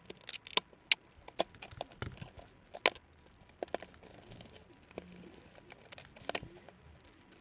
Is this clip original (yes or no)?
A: yes